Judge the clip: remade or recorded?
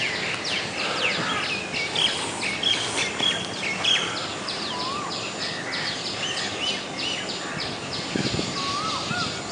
recorded